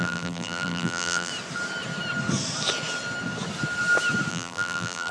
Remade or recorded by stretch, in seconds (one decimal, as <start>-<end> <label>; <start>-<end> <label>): 0.0-1.3 remade; 1.3-4.3 recorded; 4.3-5.1 remade